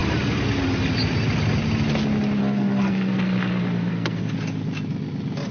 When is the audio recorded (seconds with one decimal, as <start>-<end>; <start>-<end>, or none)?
0.0-2.4; 4.3-5.5